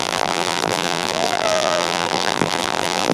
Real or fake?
fake